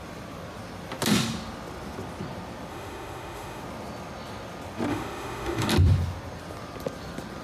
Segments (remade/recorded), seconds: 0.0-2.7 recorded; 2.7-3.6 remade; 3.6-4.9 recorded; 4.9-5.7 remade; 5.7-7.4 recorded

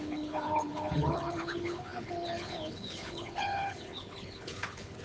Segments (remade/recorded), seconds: 0.0-5.0 remade